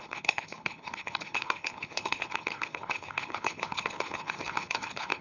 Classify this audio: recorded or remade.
remade